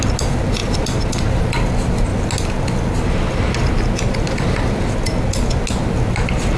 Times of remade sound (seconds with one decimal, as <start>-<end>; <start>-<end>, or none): none